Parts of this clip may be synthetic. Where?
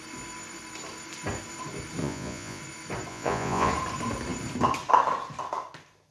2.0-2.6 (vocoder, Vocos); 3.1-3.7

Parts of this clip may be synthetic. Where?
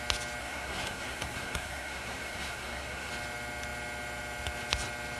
0.4-3.1 (codec, SNAC)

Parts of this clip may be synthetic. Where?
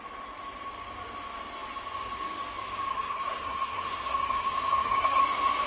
2.9-5.2 (codec, SNAC)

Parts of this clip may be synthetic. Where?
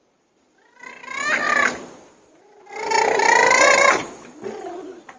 0.0-1.0 (vocoder, BigVGAN v2); 1.8-3.4; 4.1-5.2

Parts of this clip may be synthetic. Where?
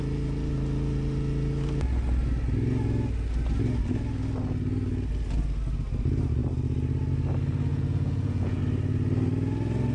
7.7-8.6 (vocoder, Vocos)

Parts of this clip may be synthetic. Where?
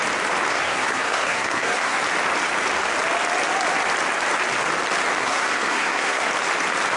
0.5-2.0 (codec, SNAC); 5.2-6.3